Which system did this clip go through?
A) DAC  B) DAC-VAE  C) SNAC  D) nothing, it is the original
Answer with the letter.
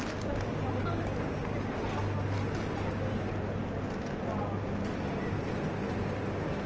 D